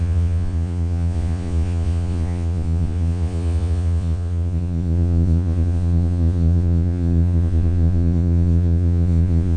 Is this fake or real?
fake